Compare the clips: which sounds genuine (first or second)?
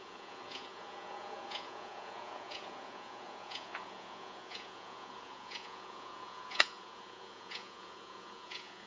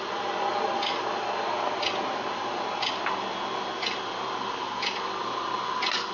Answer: second